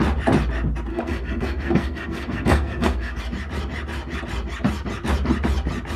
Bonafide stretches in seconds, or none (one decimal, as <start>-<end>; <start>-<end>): 0.0-0.9; 3.2-6.0